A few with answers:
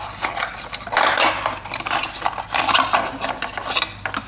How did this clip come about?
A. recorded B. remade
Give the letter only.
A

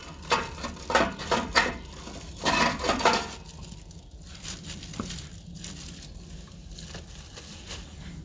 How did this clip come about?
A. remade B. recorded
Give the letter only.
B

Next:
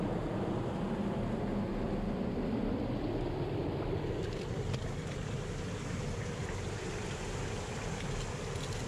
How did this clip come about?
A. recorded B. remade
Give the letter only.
A